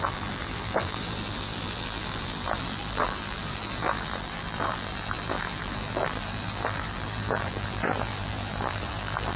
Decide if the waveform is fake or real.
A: fake